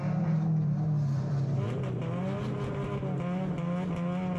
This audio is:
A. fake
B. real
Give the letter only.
B